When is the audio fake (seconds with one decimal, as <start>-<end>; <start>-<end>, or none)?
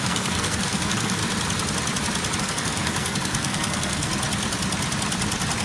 0.0-1.2; 2.4-4.1